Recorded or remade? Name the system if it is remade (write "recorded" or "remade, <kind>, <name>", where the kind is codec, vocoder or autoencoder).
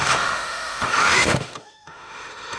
remade, autoencoder, DAC-VAE